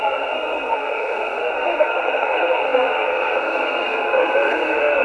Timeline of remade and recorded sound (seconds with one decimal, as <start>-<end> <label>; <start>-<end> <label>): 0.0-5.0 remade